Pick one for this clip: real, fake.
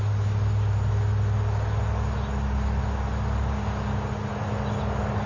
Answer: real